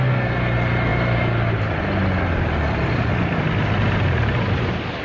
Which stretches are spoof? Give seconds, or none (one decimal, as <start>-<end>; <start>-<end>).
none